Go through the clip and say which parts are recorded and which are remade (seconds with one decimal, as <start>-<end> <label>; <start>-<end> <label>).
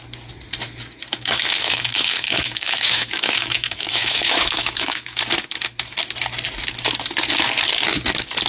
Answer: 0.0-1.1 recorded; 1.1-5.2 remade; 5.2-8.5 recorded